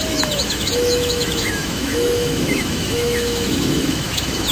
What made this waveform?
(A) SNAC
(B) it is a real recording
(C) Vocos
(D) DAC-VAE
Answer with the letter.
D